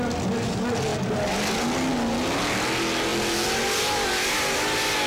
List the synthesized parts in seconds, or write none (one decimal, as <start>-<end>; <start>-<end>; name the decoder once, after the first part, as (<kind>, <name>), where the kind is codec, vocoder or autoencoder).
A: none